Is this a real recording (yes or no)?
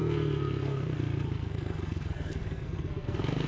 no